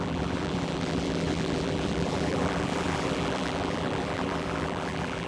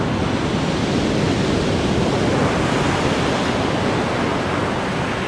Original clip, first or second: second